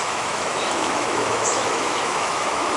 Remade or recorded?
remade